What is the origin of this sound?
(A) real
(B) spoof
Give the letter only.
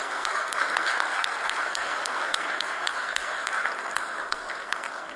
B